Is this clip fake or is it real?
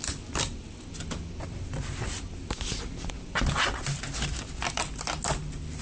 real